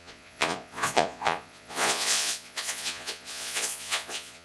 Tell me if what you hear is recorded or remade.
remade